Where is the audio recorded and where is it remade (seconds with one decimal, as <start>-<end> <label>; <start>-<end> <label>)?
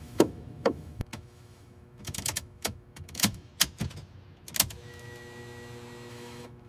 0.0-3.5 remade; 3.5-6.1 recorded; 6.1-6.7 remade